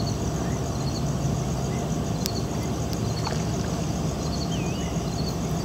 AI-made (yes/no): no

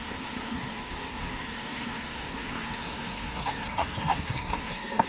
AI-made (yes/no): yes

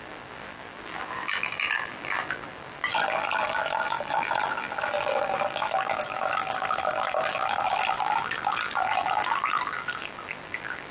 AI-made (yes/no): yes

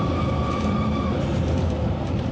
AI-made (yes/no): yes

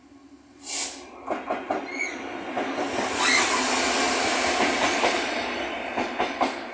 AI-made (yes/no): no